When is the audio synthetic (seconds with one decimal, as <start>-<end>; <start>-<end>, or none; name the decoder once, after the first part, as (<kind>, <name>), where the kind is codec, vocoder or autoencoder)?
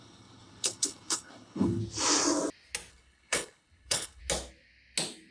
0.0-1.8 (codec, HILCodec); 2.9-4.2